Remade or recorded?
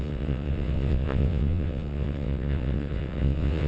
remade